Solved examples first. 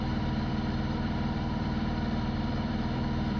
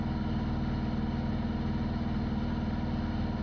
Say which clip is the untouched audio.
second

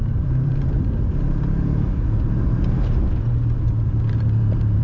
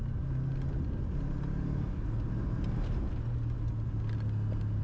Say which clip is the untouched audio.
second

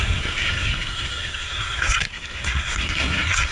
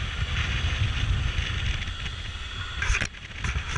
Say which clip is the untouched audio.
second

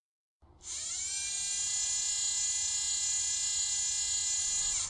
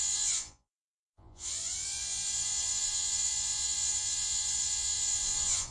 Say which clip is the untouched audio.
first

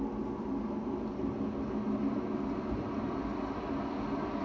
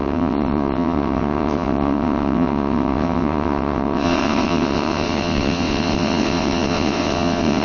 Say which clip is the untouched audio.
first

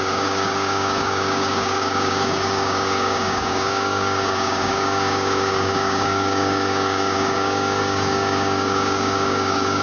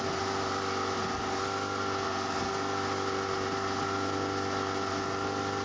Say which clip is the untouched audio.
second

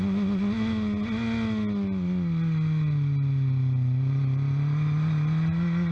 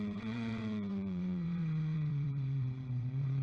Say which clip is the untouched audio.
first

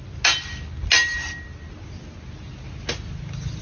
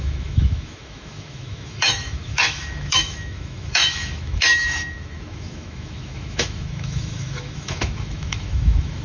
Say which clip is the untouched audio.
first